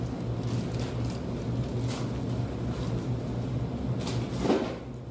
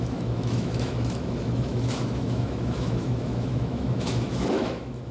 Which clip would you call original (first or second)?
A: first